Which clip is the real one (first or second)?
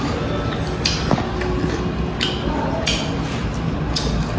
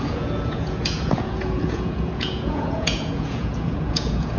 first